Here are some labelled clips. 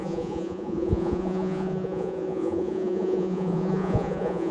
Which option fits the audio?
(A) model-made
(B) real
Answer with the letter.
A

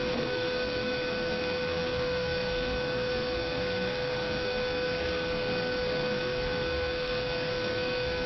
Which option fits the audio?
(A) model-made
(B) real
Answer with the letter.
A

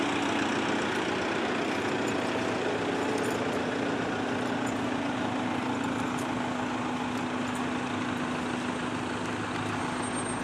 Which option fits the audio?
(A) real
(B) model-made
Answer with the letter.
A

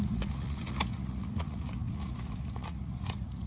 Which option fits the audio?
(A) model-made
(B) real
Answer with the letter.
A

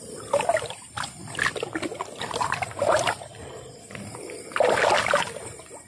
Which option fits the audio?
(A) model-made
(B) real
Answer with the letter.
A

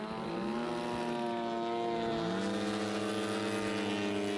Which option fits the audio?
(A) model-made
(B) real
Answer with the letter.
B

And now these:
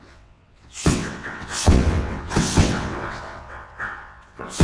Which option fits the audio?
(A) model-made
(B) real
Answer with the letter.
A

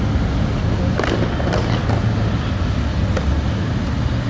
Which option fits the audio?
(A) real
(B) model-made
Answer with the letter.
A